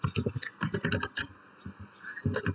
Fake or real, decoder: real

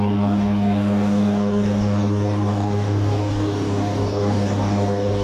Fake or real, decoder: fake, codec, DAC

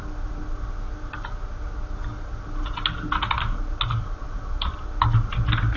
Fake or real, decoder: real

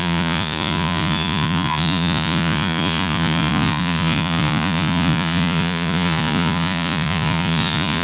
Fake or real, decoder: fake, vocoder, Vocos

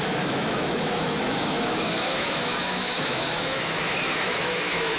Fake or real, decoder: fake, autoencoder, DAC-VAE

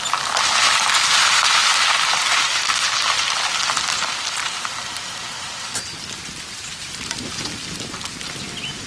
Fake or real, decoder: real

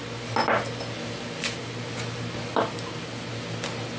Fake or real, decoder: real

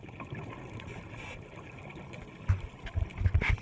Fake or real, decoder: real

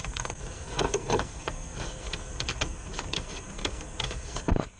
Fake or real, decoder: fake, codec, SNAC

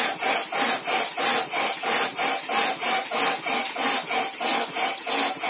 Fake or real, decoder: real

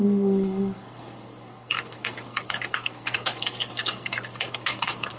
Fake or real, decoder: fake, codec, SNAC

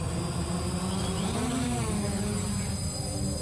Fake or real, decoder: real